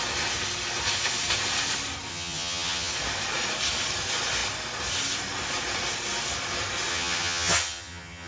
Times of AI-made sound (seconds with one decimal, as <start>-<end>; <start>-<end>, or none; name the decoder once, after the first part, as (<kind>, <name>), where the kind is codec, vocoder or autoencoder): 2.1-2.9 (vocoder, HiFi-GAN); 6.9-8.3